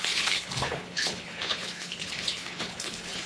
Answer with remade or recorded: remade